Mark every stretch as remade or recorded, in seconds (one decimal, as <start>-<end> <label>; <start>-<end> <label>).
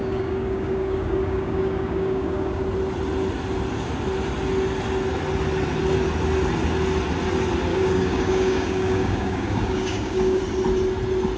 0.0-2.6 remade; 2.6-7.7 recorded; 7.7-10.4 remade; 10.4-11.4 recorded